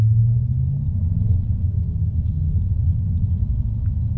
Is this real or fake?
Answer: real